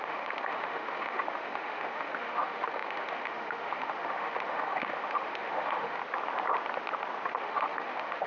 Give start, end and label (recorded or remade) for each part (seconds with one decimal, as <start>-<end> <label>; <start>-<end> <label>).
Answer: 0.0-6.0 remade; 6.0-7.4 recorded; 7.4-8.3 remade